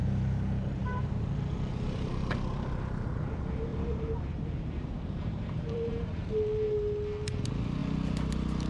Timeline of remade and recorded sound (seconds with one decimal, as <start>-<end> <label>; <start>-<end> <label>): 0.0-2.3 remade; 2.3-3.7 recorded; 3.7-6.3 remade; 6.3-8.7 recorded